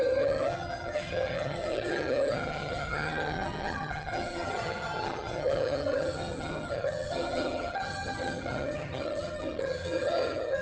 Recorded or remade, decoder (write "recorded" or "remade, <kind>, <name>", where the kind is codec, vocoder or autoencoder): remade, vocoder, HiFi-GAN